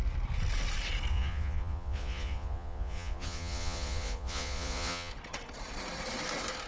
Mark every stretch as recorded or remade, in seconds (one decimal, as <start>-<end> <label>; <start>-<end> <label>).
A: 0.0-1.1 recorded; 1.1-5.1 remade; 5.1-6.7 recorded